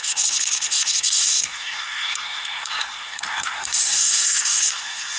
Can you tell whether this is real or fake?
fake